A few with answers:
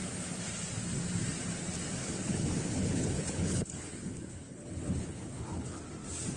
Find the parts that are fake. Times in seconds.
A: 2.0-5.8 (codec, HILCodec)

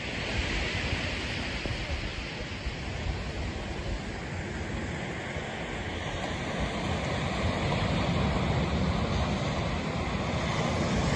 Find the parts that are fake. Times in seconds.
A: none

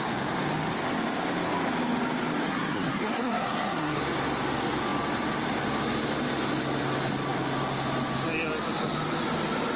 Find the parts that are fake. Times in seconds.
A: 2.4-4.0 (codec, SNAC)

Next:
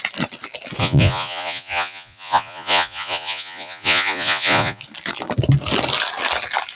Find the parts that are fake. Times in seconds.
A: 0.8-4.8 (vocoder, Vocos)